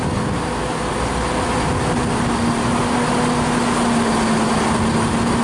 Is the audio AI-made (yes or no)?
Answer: no